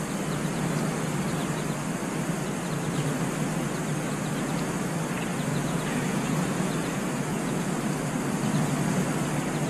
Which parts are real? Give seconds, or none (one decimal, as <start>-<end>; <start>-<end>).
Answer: 0.0-5.5; 7.7-9.7